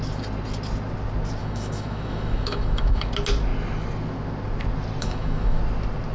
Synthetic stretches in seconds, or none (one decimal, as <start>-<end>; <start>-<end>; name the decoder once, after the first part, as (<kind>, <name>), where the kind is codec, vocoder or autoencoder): 1.4-3.1 (autoencoder, DAC-VAE); 5.0-5.6